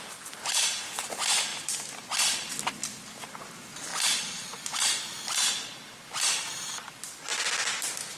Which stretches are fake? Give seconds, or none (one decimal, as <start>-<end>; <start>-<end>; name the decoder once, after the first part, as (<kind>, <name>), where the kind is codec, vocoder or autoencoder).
none